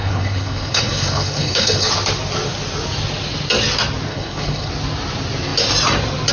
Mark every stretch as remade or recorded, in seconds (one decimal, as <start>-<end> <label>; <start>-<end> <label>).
0.0-1.9 remade; 1.9-4.1 recorded; 4.1-4.7 remade; 4.7-6.3 recorded

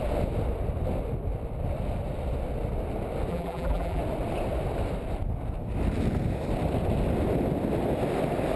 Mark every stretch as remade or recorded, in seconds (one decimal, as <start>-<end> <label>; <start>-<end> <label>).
0.0-3.3 recorded; 3.3-4.0 remade; 4.0-8.6 recorded

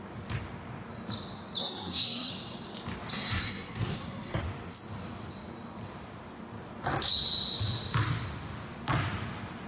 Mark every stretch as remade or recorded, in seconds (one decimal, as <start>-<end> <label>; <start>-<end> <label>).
0.0-1.6 recorded; 1.6-2.3 remade; 2.3-3.1 recorded; 3.1-4.4 remade; 4.4-9.7 recorded

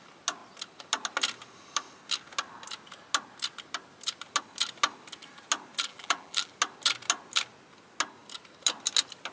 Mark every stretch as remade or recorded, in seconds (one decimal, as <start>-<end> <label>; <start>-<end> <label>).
0.0-5.9 recorded; 5.9-6.5 remade; 6.5-9.3 recorded

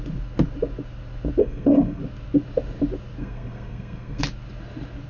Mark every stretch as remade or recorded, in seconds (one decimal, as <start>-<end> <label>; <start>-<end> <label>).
0.0-1.4 recorded; 1.4-2.0 remade; 2.0-3.2 recorded; 3.2-4.2 remade; 4.2-5.1 recorded